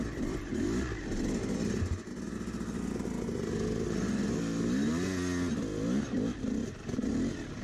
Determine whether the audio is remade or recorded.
recorded